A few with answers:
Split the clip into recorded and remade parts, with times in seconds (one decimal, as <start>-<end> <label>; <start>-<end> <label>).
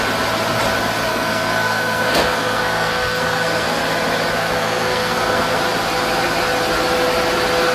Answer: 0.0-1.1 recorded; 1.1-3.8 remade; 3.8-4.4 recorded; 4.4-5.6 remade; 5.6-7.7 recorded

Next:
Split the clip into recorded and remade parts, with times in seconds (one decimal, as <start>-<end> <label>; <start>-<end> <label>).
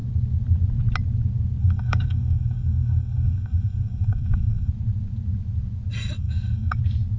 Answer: 0.0-1.6 recorded; 1.6-4.7 remade; 4.7-6.2 recorded; 6.2-6.8 remade; 6.8-7.2 recorded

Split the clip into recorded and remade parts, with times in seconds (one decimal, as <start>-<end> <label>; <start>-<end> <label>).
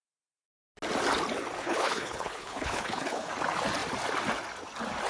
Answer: 0.0-1.6 recorded; 1.6-3.3 remade; 3.3-5.1 recorded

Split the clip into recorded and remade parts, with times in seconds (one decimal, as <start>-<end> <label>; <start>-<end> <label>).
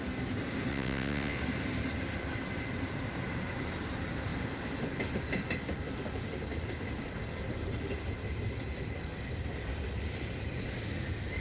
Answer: 0.0-0.7 recorded; 0.7-1.4 remade; 1.4-11.4 recorded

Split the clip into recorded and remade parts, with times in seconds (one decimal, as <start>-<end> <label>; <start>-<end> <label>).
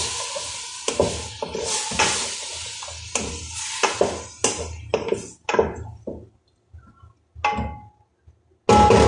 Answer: 0.0-9.1 recorded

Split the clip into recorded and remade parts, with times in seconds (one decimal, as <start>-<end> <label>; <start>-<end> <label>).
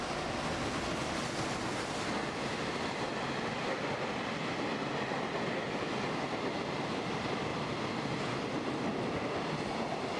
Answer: 0.0-10.2 recorded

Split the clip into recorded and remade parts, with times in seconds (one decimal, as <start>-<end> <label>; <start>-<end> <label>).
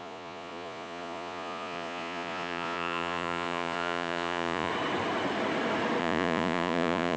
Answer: 0.0-4.7 remade; 4.7-6.0 recorded; 6.0-7.2 remade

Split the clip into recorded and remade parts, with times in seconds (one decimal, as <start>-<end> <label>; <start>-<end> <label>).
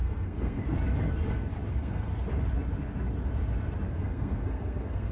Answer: 0.0-0.6 remade; 0.6-1.7 recorded; 1.7-2.1 remade; 2.1-3.9 recorded; 3.9-5.1 remade